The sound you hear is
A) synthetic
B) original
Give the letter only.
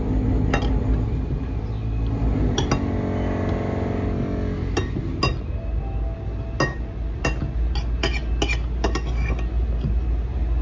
B